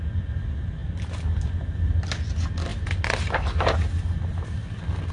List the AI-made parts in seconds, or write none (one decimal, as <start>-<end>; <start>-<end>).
none